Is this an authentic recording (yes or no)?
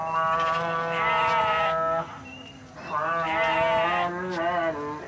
yes